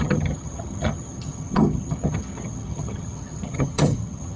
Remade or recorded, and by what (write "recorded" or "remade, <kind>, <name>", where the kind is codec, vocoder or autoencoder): remade, vocoder, HiFi-GAN